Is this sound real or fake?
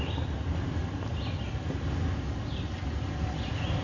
real